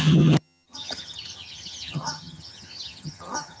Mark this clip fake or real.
fake